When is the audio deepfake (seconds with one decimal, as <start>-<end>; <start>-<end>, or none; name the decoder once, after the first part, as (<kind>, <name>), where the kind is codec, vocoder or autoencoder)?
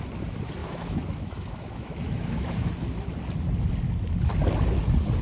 0.6-2.7 (autoencoder, DAC-VAE)